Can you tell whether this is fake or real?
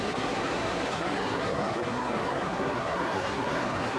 fake